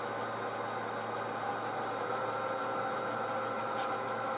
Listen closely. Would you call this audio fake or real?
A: real